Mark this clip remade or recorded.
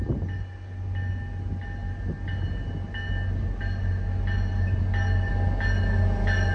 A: recorded